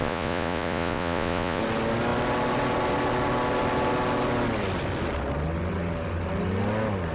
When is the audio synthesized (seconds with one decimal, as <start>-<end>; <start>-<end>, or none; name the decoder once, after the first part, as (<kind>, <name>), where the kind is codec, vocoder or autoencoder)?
0.0-1.6 (vocoder, Vocos)

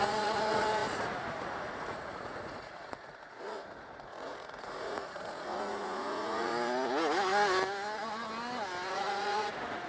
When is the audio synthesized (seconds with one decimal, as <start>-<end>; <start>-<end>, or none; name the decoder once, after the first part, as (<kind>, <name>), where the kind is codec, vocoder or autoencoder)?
0.0-6.5 (vocoder, Vocos); 8.9-9.9

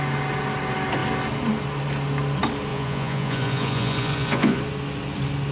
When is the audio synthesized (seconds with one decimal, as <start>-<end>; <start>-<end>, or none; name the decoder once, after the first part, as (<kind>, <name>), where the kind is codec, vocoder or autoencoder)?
2.7-4.6 (vocoder, Vocos)

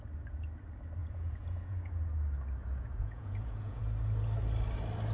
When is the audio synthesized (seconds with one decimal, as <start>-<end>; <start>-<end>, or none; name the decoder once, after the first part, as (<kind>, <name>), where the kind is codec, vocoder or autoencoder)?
1.0-2.0 (vocoder, Vocos); 2.6-3.8